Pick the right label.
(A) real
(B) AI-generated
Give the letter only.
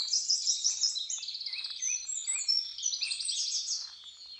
A